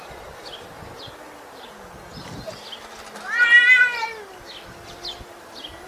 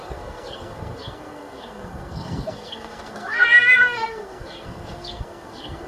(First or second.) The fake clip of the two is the second